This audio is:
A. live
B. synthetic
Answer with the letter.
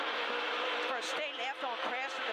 A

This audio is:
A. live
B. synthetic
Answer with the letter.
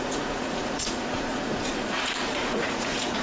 B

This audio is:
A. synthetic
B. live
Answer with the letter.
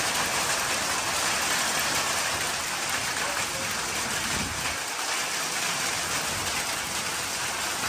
B